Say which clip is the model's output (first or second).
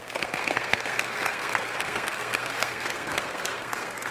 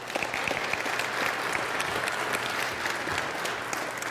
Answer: first